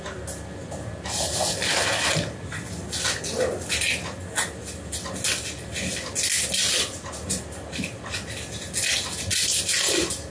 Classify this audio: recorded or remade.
recorded